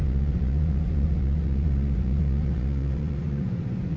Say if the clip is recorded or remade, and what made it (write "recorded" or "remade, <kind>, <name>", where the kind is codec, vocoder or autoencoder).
remade, vocoder, Vocos